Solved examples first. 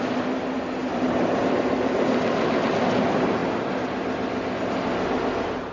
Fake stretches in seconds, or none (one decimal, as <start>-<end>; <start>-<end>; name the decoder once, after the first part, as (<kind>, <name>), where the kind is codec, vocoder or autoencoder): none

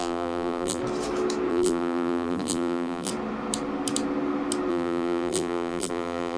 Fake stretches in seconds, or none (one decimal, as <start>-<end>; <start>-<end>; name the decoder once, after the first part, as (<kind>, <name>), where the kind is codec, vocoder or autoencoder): 0.0-0.8 (vocoder, BigVGAN v2); 1.5-3.1; 4.7-6.4

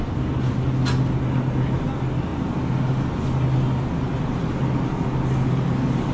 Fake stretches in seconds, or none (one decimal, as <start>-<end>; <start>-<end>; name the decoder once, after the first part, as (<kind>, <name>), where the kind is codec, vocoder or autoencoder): none

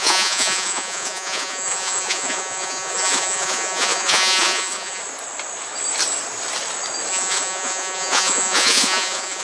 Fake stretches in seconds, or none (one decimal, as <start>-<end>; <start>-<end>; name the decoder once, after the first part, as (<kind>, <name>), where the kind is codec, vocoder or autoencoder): 0.0-5.0 (vocoder, Vocos); 7.1-9.4